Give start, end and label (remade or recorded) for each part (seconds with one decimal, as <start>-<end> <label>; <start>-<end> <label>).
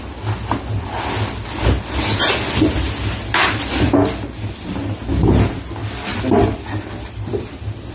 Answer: 0.0-7.9 recorded